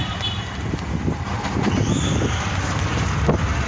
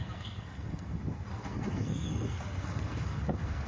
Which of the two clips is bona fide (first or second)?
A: first